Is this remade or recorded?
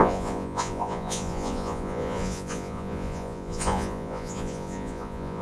remade